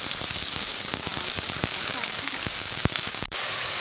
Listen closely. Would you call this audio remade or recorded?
remade